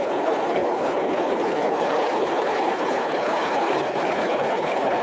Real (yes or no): no